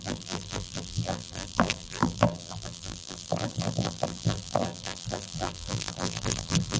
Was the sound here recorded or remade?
remade